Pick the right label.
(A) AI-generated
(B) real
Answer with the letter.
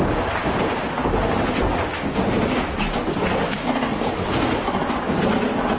B